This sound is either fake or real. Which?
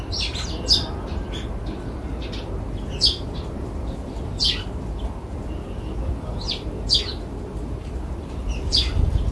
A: real